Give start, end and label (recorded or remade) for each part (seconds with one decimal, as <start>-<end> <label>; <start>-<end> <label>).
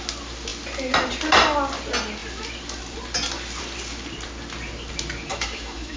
0.0-5.3 recorded; 5.3-6.0 remade